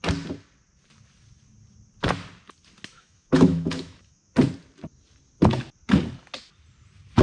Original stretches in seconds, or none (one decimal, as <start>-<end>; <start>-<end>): 0.0-2.9; 4.3-7.2